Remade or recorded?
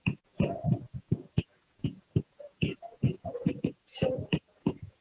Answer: remade